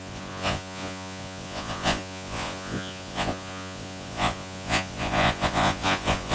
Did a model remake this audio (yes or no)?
yes